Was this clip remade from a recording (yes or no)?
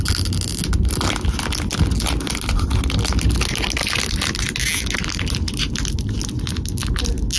no